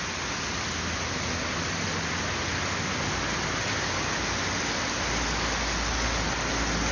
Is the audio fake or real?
real